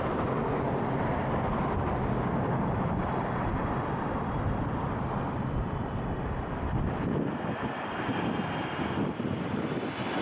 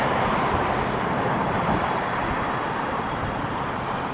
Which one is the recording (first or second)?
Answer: first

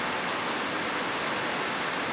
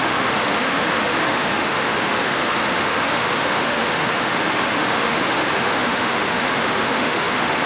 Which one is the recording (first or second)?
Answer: first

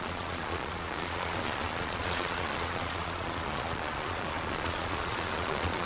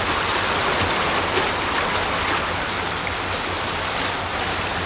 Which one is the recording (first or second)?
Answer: second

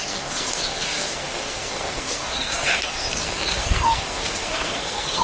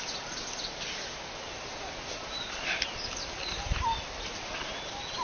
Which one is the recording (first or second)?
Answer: second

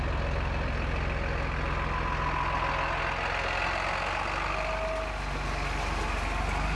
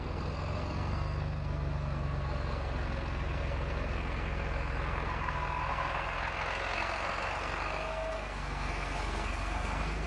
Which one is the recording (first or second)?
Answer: first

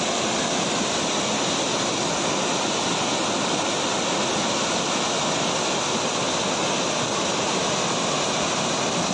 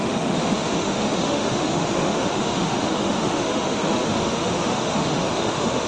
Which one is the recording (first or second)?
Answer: first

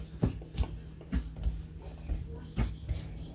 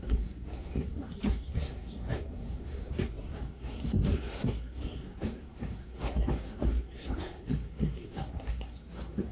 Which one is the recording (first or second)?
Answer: first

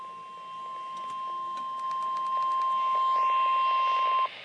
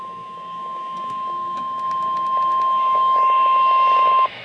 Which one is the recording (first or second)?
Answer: first